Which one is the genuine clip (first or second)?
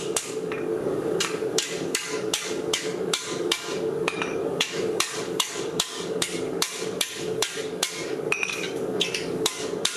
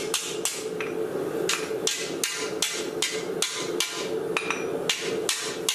second